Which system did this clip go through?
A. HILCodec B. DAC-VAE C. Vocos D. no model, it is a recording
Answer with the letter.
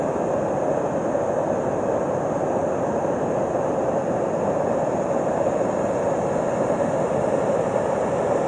D